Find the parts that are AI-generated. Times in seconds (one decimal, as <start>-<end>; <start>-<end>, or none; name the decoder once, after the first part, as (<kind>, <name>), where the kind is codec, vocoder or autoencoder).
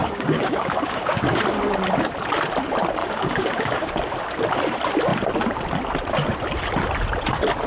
0.0-1.4 (codec, DAC); 3.0-3.9